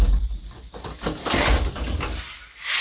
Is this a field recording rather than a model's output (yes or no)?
yes